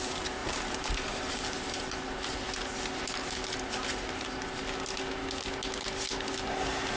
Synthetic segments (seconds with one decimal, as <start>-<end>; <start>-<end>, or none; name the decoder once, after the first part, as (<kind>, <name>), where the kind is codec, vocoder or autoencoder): 0.4-1.8 (vocoder, BigVGAN v2)